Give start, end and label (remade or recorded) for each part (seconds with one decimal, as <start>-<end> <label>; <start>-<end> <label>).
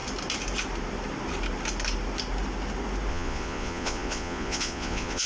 0.0-3.1 recorded; 3.1-5.3 remade